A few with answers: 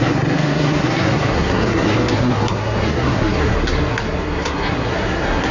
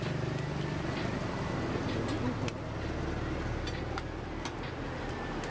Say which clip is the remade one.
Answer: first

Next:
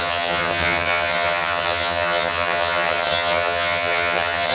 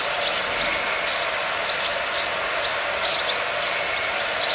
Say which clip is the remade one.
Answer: first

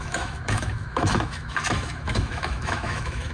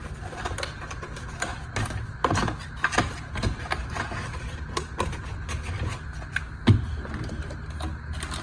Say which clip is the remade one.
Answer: first